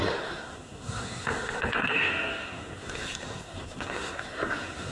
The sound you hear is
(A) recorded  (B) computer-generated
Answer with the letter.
B